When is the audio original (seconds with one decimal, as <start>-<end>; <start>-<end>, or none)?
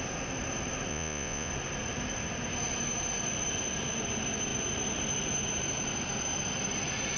0.0-0.9; 1.5-7.2